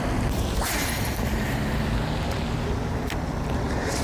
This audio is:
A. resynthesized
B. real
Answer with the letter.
B